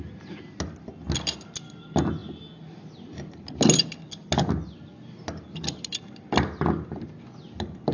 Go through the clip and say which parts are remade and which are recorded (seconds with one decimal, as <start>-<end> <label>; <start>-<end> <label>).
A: 0.0-7.9 recorded